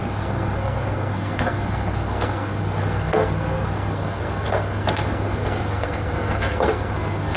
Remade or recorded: remade